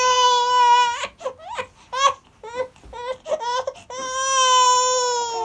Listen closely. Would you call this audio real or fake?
real